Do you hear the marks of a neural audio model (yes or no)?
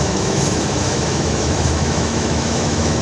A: yes